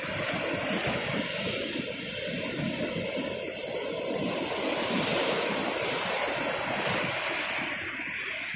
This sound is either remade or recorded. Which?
recorded